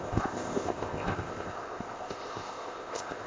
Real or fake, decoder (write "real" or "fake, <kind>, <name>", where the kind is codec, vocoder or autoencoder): fake, codec, ZipCodec